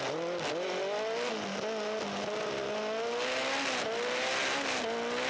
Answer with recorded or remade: recorded